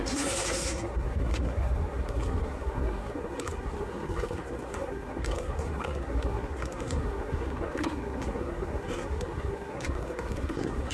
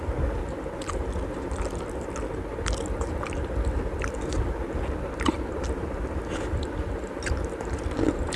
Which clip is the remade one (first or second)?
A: first